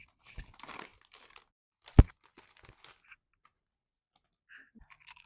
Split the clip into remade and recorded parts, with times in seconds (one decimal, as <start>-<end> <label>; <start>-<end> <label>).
0.0-5.3 recorded

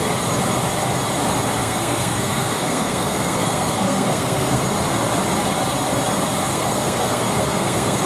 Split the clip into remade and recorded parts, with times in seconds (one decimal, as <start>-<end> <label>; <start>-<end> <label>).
0.0-1.6 recorded; 1.6-4.6 remade; 4.6-6.5 recorded; 6.5-8.1 remade

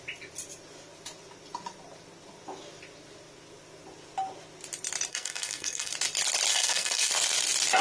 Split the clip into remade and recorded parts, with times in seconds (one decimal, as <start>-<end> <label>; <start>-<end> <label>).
0.0-5.1 recorded; 5.1-5.9 remade; 5.9-6.5 recorded; 6.5-7.1 remade; 7.1-7.8 recorded

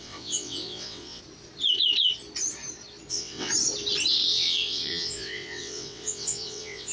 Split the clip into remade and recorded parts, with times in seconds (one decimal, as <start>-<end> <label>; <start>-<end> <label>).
0.0-1.2 remade; 1.2-3.1 recorded; 3.1-3.5 remade; 3.5-4.1 recorded; 4.1-6.9 remade

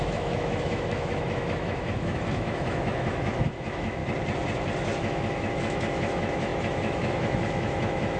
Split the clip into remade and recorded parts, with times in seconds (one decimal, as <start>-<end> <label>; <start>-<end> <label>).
0.0-4.0 remade; 4.0-5.0 recorded; 5.0-8.2 remade

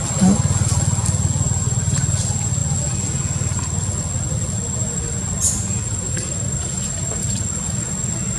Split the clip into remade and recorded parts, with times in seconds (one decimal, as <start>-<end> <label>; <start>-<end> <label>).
0.0-8.4 recorded

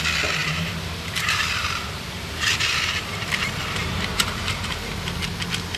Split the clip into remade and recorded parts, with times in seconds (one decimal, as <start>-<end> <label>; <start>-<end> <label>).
0.0-0.4 recorded; 0.4-3.3 remade; 3.3-3.8 recorded; 3.8-4.9 remade; 4.9-5.8 recorded

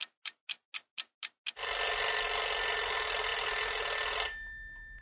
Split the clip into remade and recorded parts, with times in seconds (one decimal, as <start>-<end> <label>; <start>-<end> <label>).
0.0-5.0 recorded